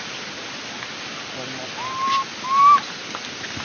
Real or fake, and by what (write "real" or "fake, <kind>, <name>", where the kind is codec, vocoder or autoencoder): real